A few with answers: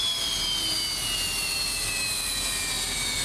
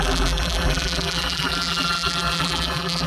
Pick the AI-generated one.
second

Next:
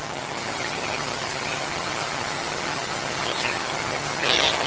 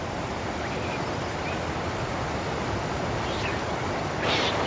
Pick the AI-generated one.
first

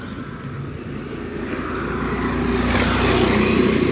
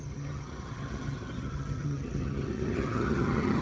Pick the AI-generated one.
second